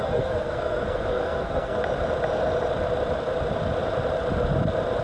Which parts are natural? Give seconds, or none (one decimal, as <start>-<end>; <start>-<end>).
1.8-5.0